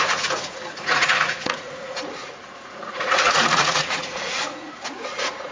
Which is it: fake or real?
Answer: fake